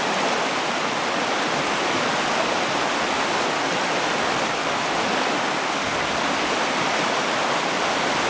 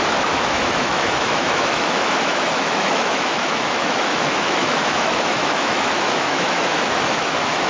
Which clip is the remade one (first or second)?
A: second